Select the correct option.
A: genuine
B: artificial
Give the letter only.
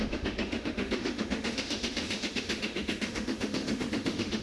B